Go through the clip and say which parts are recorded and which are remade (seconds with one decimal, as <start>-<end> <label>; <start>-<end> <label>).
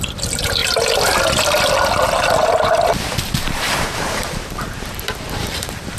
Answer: 0.0-0.6 remade; 0.6-3.3 recorded; 3.3-6.0 remade